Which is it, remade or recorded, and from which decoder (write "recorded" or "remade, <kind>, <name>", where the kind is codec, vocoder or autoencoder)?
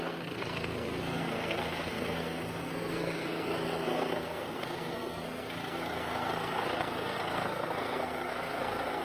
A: remade, codec, SNAC